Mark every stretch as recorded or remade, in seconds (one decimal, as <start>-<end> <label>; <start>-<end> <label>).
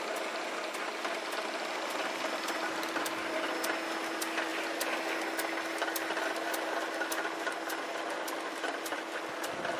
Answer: 0.0-9.8 recorded